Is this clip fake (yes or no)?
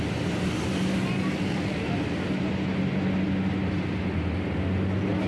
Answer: no